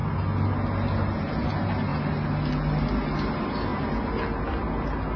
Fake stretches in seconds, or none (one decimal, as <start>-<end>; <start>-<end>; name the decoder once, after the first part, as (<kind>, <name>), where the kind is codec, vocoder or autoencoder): none